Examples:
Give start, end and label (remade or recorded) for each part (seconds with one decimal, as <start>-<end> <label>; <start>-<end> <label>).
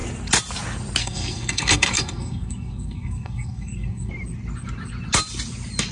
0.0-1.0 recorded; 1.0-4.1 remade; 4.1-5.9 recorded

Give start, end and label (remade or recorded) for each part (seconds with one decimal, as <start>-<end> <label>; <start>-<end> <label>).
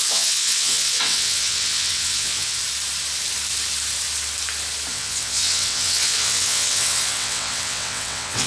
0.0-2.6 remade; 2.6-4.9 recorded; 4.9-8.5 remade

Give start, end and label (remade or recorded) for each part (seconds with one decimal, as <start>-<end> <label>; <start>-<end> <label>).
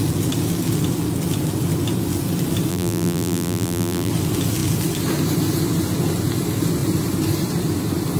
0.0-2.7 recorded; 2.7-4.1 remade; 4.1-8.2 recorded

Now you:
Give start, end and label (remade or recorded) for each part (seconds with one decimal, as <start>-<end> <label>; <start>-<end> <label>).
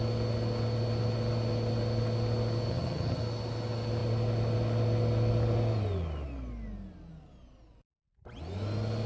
0.0-2.7 recorded; 2.7-3.2 remade; 3.2-9.1 recorded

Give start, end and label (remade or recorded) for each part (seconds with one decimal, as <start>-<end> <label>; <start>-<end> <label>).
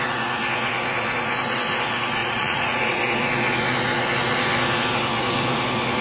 0.0-2.2 recorded; 2.2-2.8 remade; 2.8-6.0 recorded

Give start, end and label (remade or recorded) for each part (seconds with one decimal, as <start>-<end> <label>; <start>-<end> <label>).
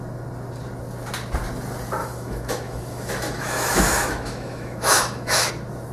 0.0-2.0 recorded; 2.0-5.5 remade; 5.5-5.9 recorded